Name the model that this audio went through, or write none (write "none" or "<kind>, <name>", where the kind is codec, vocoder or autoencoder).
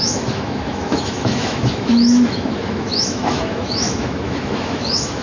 autoencoder, DAC-VAE